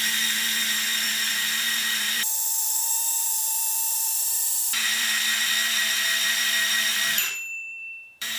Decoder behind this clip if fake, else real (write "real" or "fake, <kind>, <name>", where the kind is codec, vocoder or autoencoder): fake, vocoder, BigVGAN v2